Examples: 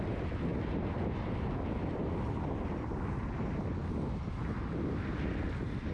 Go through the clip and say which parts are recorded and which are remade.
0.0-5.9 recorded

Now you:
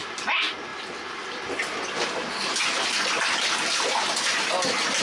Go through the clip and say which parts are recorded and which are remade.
0.0-5.0 recorded

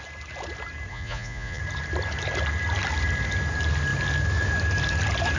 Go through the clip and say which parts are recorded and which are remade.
0.0-0.9 recorded; 0.9-1.6 remade; 1.6-5.4 recorded

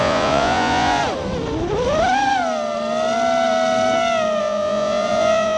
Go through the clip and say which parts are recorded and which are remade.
0.0-1.0 remade; 1.0-4.4 recorded; 4.4-5.6 remade

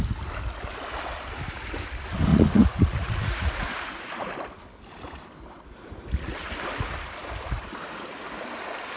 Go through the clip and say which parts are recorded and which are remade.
0.0-2.3 recorded; 2.3-4.3 remade; 4.3-9.0 recorded

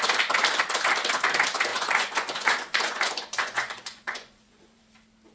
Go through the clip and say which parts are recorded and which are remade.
0.0-1.7 recorded; 1.7-4.8 remade; 4.8-5.3 recorded

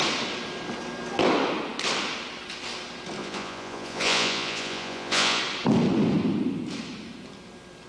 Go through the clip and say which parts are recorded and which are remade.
0.0-3.2 recorded; 3.2-5.4 remade; 5.4-7.9 recorded